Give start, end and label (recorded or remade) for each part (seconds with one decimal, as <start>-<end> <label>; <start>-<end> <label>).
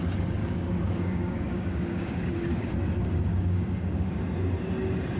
0.0-0.4 recorded; 0.4-2.7 remade; 2.7-3.3 recorded; 3.3-4.1 remade; 4.1-5.2 recorded